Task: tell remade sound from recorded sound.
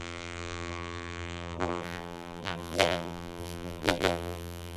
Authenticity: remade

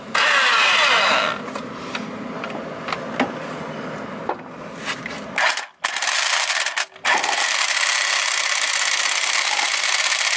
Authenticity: recorded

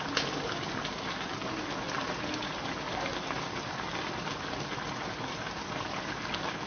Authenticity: recorded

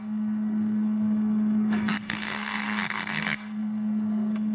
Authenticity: remade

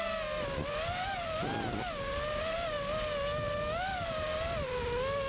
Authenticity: recorded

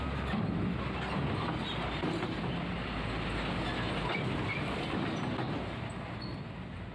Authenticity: recorded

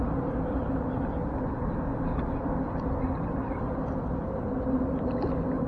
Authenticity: recorded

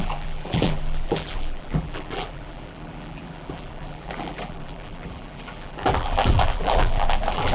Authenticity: remade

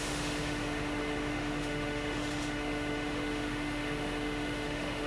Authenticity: remade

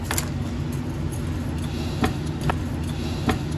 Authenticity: recorded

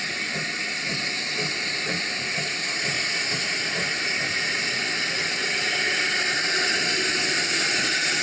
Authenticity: recorded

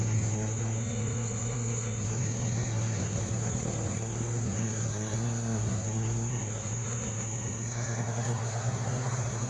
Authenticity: remade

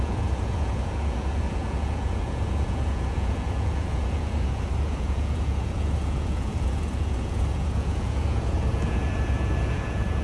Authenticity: remade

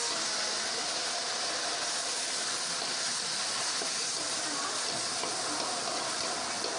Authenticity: recorded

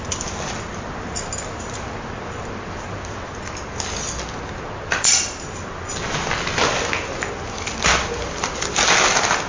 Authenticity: recorded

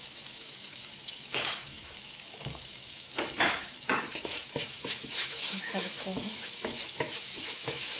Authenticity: remade